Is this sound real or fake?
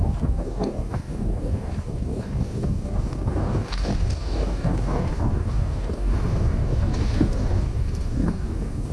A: fake